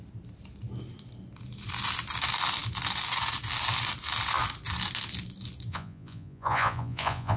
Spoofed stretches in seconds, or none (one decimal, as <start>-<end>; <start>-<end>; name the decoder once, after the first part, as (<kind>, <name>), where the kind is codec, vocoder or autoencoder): 5.7-7.4 (vocoder, Vocos)